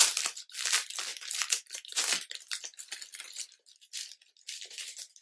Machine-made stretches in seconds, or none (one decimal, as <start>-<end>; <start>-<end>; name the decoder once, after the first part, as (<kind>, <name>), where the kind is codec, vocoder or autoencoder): none